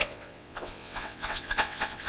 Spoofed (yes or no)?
yes